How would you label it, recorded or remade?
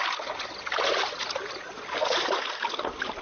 recorded